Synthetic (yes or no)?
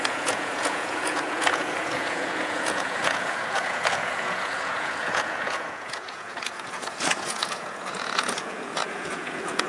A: yes